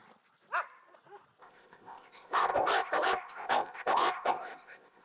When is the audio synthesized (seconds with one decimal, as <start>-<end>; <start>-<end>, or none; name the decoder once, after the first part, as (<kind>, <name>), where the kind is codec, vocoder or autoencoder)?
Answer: 1.4-5.0 (codec, ZipCodec)

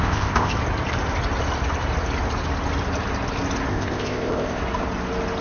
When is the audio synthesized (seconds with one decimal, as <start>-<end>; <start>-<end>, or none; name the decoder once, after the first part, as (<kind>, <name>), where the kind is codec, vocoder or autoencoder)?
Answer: 0.0-0.5 (codec, ZipCodec); 3.7-4.6

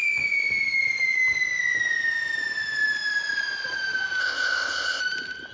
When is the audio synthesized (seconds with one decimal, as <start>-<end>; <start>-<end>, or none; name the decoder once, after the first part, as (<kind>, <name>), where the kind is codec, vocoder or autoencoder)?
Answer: 4.2-5.0 (codec, ZipCodec)

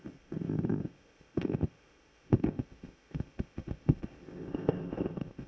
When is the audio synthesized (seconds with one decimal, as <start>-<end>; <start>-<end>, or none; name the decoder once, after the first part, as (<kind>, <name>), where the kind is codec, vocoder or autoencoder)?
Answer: 0.0-5.5 (codec, ZipCodec)

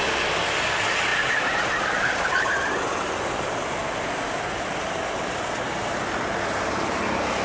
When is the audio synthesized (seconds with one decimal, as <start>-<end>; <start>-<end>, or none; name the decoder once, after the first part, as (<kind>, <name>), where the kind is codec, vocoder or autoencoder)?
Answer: none

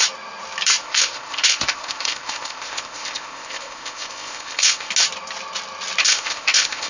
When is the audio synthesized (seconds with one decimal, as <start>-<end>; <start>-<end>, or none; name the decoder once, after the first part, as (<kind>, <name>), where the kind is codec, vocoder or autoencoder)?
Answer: 0.8-4.9 (codec, ZipCodec); 6.0-6.9

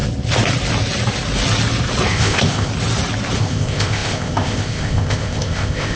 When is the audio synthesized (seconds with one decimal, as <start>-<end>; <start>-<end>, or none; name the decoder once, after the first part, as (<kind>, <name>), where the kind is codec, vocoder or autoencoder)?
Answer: 2.1-2.7 (codec, ZipCodec); 3.4-6.0

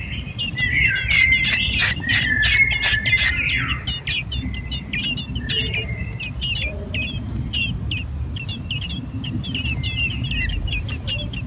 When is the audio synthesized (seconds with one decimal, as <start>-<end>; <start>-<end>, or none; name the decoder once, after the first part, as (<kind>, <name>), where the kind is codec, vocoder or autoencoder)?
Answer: none